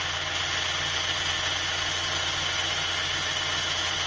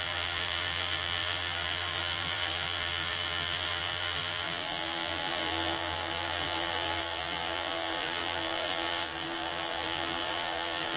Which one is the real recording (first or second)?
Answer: first